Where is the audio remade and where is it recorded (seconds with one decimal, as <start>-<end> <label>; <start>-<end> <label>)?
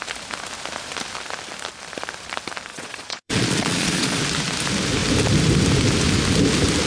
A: 0.0-2.7 recorded; 2.7-4.2 remade; 4.2-6.9 recorded